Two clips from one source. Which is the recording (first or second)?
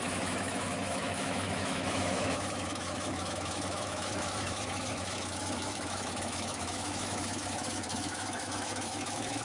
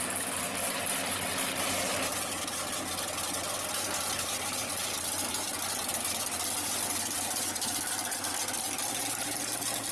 second